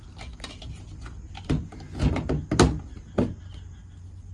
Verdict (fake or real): real